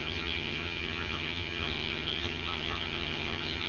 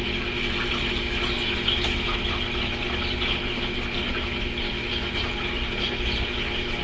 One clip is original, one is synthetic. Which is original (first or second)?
second